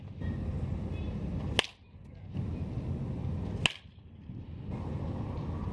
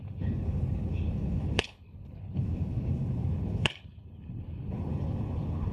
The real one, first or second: first